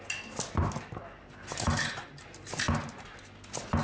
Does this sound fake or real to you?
real